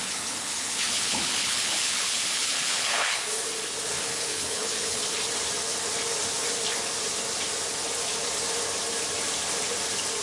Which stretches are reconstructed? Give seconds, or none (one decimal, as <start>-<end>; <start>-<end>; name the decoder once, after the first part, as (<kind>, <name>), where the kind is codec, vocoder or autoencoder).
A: 0.0-3.2 (codec, HILCodec); 4.0-5.0